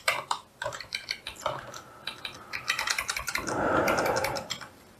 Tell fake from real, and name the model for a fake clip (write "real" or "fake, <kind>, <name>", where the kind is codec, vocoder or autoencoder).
fake, vocoder, BigVGAN v2